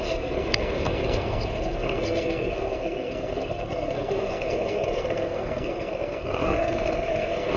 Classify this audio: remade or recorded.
remade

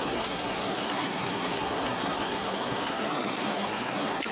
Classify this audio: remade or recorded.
remade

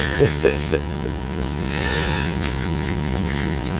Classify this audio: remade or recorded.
remade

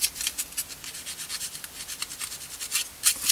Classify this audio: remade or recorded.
recorded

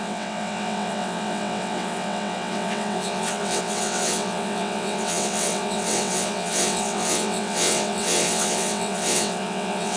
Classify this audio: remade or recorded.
remade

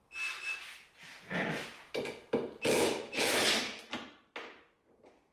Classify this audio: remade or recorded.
recorded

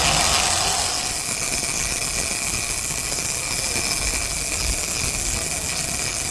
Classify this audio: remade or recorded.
recorded